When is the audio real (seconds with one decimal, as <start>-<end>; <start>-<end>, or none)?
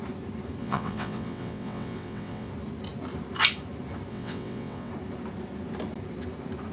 0.0-0.6; 2.5-4.1; 4.9-6.7